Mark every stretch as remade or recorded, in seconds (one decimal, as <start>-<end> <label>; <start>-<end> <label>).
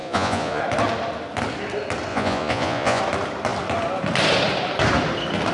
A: 0.0-0.6 remade; 0.6-2.1 recorded; 2.1-3.0 remade; 3.0-5.5 recorded